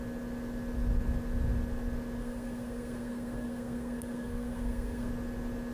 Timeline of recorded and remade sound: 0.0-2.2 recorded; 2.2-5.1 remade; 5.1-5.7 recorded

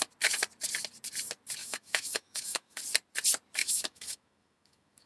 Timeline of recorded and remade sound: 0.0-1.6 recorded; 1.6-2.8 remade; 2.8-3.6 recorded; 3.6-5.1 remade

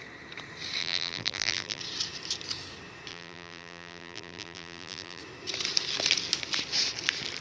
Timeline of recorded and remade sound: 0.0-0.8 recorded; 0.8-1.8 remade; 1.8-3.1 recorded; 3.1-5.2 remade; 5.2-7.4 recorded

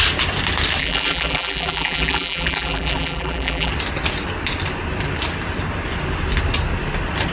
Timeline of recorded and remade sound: 0.0-0.8 recorded; 0.8-3.7 remade; 3.7-7.3 recorded